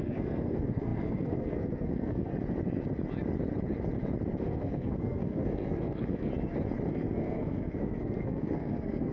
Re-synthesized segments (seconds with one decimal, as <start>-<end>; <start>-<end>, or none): 0.0-2.3; 4.4-6.3; 6.9-9.1